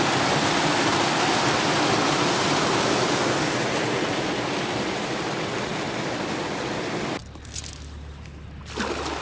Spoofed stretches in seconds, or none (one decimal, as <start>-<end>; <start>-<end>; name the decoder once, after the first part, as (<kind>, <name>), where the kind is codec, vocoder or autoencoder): none